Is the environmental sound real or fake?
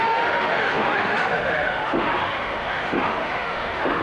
fake